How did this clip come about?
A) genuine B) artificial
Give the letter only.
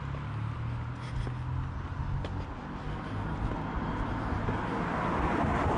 A